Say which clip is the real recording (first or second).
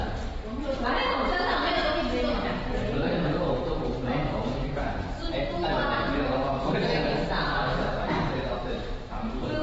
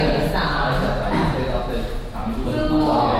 second